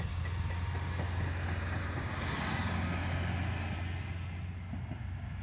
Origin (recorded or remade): recorded